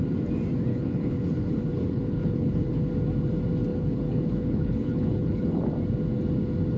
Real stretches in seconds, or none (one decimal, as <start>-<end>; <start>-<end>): 0.0-0.7; 2.9-3.7; 5.6-6.8